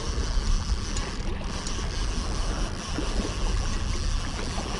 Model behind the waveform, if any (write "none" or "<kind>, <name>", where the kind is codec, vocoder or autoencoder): none